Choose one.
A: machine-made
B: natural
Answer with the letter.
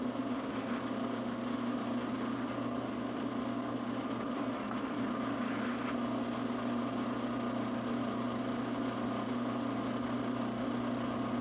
B